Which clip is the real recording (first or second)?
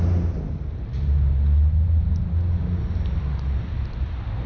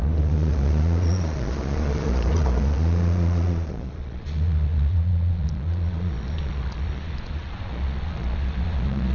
first